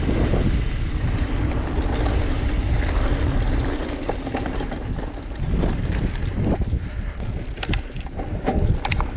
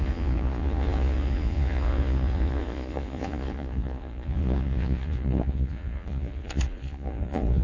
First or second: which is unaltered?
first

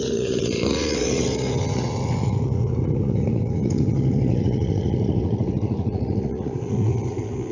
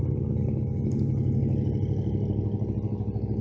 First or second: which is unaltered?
second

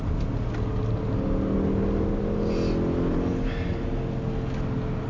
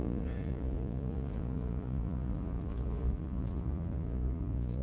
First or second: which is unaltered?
first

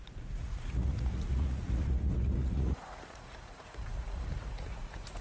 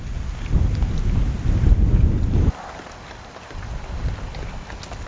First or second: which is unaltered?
second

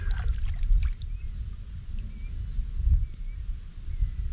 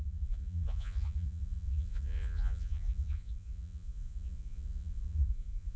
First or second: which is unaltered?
first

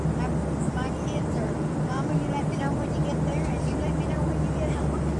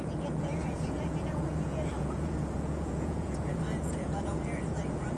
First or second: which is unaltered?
first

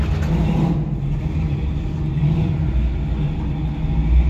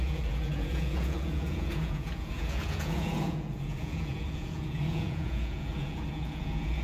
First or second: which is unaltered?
first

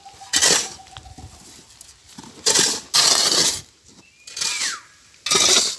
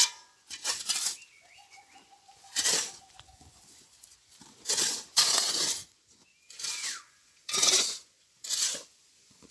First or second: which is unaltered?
first